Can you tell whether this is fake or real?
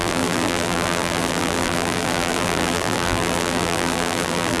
fake